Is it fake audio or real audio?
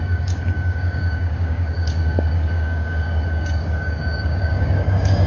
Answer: fake